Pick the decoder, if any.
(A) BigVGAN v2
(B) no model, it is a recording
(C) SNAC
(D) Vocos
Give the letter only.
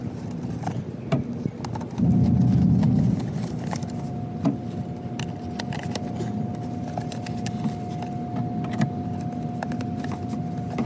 B